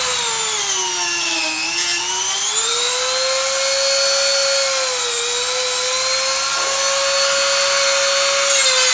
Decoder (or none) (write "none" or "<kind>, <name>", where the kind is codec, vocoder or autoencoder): none